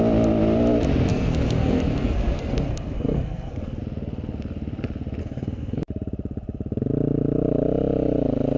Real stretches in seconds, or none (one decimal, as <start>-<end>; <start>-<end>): 0.0-1.1; 3.8-5.2; 5.8-8.6